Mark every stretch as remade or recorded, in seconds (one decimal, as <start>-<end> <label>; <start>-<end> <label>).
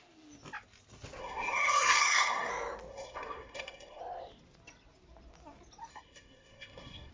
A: 0.0-1.2 recorded; 1.2-2.5 remade; 2.5-2.9 recorded; 2.9-4.0 remade; 4.0-5.9 recorded; 5.9-7.1 remade